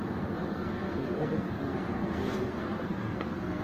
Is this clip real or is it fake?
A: fake